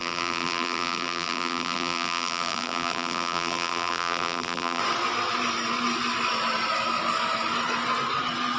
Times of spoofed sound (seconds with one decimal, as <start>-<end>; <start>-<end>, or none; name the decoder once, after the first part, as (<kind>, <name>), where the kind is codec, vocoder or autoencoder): 0.0-4.8 (vocoder, BigVGAN v2)